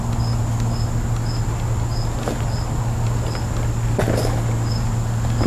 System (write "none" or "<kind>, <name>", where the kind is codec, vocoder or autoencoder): none